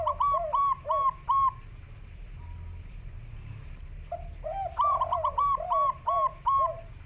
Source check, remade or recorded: recorded